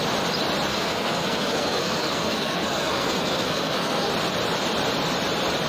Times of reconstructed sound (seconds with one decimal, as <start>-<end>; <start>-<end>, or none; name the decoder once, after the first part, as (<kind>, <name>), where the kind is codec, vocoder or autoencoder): 0.7-4.1 (codec, SNAC)